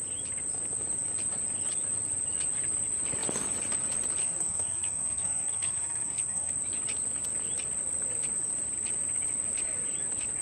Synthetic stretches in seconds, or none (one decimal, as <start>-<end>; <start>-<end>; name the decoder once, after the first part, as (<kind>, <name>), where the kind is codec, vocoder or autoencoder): 4.2-6.5 (codec, SNAC)